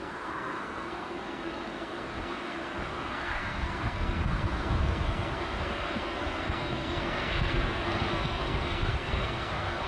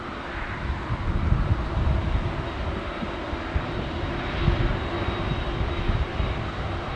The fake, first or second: first